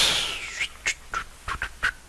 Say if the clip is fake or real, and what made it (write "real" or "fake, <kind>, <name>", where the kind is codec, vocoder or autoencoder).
real